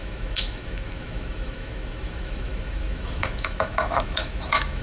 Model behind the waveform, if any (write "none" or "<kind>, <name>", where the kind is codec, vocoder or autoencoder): autoencoder, DAC-VAE